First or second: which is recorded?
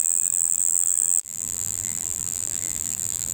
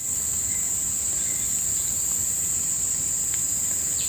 second